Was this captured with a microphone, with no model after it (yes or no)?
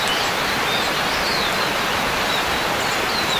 yes